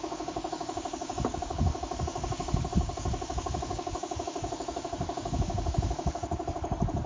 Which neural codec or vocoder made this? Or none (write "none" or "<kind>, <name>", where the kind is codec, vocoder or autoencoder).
codec, DAC